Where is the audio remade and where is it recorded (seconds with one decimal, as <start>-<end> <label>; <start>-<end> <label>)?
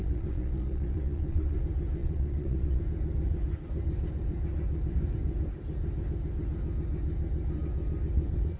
0.0-1.6 remade; 1.6-2.0 recorded; 2.0-2.8 remade; 2.8-8.6 recorded